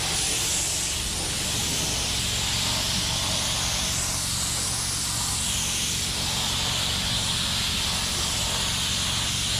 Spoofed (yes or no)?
no